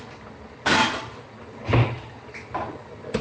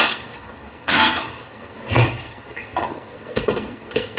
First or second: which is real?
first